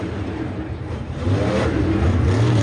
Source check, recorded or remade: remade